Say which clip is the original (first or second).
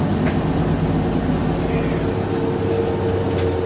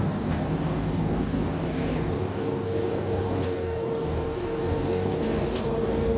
first